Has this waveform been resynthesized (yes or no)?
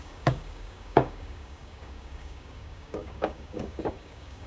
yes